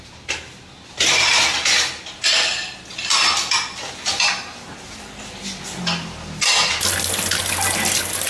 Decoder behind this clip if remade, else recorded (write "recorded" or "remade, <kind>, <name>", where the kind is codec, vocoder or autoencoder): recorded